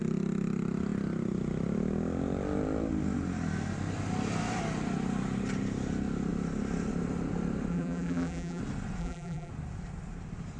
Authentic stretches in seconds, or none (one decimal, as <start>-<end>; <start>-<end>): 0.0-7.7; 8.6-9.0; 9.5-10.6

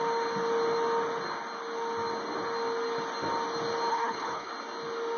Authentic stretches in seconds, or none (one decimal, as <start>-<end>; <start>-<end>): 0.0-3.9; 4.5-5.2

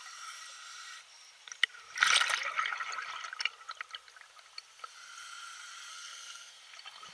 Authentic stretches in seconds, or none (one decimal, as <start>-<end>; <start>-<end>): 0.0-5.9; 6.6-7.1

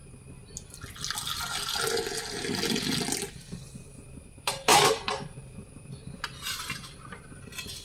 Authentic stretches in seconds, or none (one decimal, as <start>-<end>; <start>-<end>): 0.0-4.7; 5.9-7.8